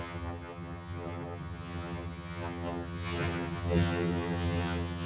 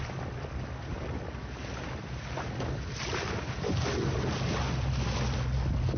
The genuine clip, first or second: second